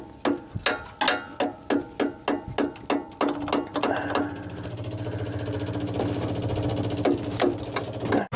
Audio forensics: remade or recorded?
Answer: recorded